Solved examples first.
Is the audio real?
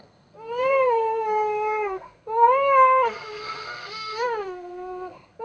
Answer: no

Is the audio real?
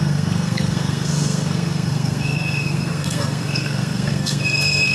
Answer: no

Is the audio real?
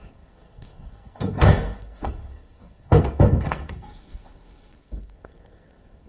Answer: no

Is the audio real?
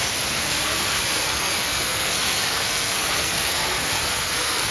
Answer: no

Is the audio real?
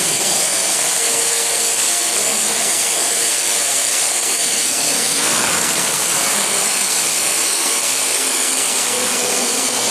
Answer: no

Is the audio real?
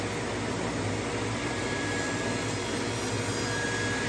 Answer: yes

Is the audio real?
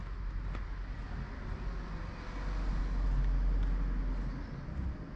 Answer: yes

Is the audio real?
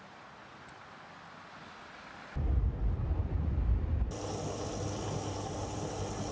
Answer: yes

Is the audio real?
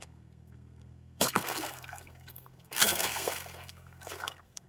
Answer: no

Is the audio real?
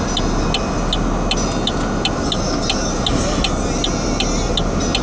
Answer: yes